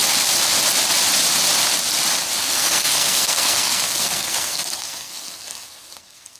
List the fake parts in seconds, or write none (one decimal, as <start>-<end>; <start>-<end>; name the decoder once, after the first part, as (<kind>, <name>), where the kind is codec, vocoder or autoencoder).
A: 2.4-6.4 (codec, SNAC)